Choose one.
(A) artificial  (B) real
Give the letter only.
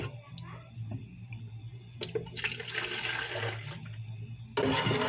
B